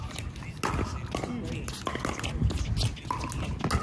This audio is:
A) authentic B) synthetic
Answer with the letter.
A